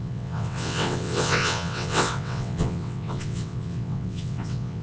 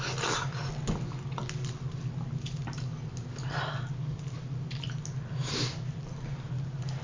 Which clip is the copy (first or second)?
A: first